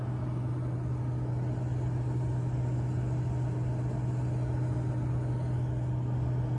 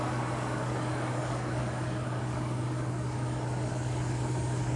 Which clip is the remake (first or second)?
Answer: second